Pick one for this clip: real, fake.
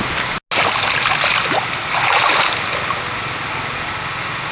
real